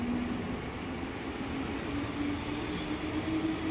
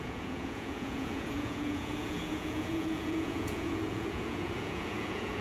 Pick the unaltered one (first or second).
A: first